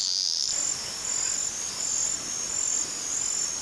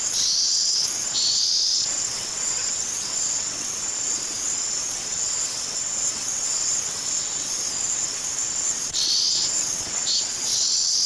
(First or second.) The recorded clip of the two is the first